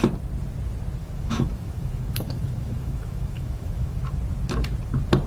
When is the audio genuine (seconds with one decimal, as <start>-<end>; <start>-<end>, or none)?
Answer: 0.0-1.0; 4.1-5.3